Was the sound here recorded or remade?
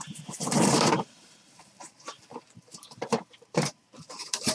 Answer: remade